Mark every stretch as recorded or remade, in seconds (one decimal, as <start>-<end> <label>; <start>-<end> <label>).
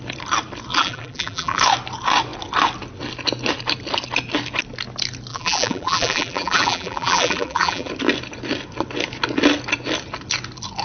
0.0-0.7 recorded; 0.7-1.6 remade; 1.6-5.3 recorded; 5.3-7.9 remade; 7.9-10.8 recorded